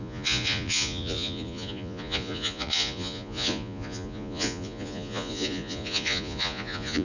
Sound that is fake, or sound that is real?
fake